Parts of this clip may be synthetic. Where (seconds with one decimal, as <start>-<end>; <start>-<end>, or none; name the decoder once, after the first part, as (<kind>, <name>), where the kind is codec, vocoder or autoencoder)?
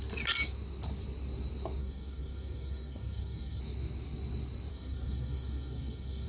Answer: 1.8-3.6 (codec, SNAC); 4.7-6.3